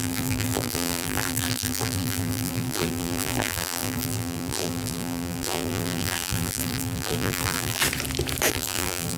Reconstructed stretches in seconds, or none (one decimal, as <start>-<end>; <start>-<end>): 0.0-7.8; 8.5-9.2